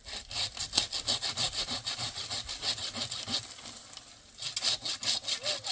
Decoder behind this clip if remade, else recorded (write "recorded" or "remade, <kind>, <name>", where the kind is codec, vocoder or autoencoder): recorded